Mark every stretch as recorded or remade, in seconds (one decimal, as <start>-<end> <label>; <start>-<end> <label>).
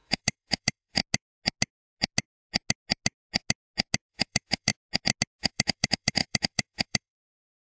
0.0-1.0 remade; 1.0-4.1 recorded; 4.1-4.7 remade; 4.7-5.4 recorded; 5.4-7.7 remade